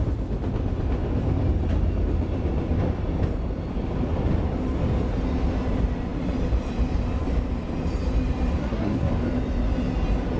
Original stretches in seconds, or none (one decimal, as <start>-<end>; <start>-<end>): 0.0-8.6; 9.1-10.4